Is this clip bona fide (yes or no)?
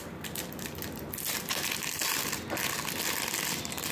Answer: yes